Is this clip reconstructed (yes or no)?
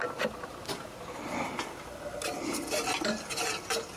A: no